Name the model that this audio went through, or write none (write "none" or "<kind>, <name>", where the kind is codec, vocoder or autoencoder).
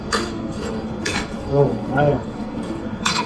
codec, SNAC